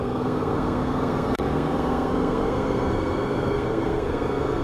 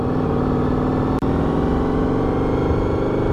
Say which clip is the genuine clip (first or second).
second